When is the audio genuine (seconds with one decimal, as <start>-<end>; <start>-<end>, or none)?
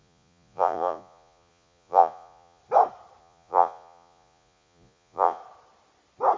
2.6-3.2; 5.4-6.4